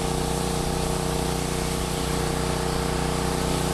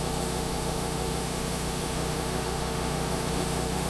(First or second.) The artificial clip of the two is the second